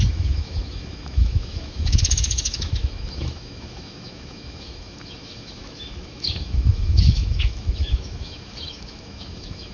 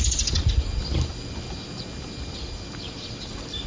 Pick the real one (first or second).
second